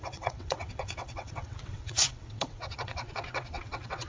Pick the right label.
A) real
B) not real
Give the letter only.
B